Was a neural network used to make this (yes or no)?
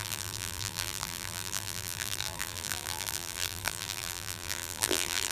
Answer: yes